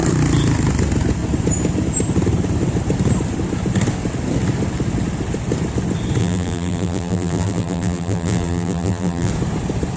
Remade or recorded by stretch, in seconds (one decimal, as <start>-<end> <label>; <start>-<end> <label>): 0.0-6.2 recorded; 6.2-9.3 remade; 9.3-10.0 recorded

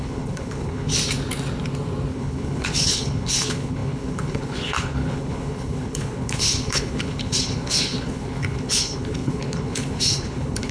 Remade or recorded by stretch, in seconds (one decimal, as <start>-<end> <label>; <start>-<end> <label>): 0.0-0.9 remade; 0.9-2.1 recorded; 2.1-10.7 remade

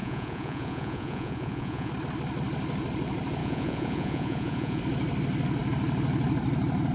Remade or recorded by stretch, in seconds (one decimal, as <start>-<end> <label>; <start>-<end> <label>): 0.0-1.9 remade; 1.9-3.4 recorded; 3.4-4.8 remade; 4.8-6.9 recorded

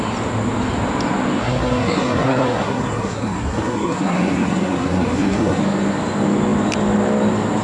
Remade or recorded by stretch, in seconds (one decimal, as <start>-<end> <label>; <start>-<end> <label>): 0.0-1.4 recorded; 1.4-5.6 remade; 5.6-7.6 recorded